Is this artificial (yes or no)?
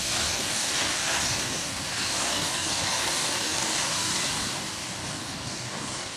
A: yes